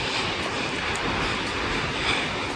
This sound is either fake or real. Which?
fake